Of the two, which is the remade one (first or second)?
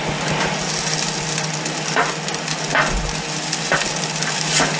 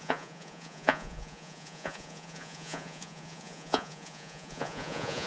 second